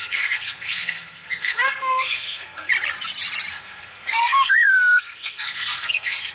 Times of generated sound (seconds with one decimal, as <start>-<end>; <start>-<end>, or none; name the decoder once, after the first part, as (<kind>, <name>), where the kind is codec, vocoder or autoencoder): 0.0-2.7 (codec, SNAC); 3.5-6.3